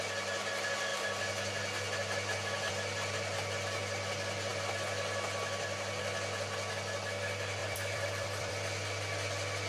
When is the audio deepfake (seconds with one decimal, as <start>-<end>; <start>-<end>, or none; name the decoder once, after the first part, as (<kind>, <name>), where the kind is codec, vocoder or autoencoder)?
7.6-8.5 (vocoder, BigVGAN v2)